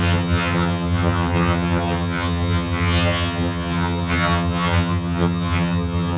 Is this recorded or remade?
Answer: remade